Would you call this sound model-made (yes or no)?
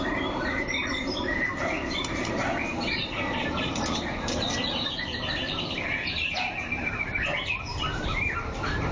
yes